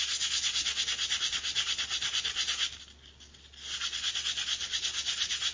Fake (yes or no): no